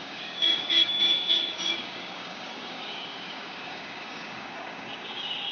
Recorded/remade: remade